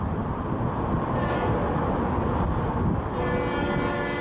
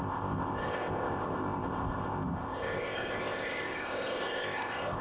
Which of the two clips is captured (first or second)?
first